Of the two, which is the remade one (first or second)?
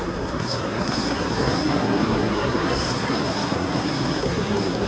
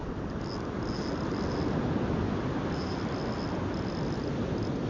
first